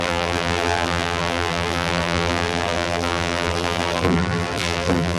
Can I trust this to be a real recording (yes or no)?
no